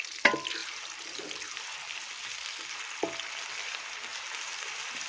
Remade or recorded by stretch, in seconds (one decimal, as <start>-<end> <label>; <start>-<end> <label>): 0.0-5.1 recorded